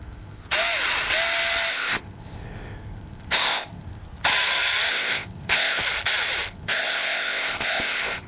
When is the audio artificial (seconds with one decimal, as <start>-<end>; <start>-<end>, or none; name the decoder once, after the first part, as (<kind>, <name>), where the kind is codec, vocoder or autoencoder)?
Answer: 0.0-0.4 (codec, ZipCodec); 1.7-4.0; 4.9-5.8; 6.5-8.3